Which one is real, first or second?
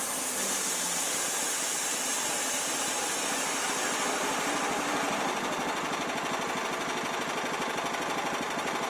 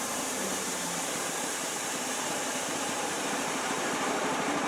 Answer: first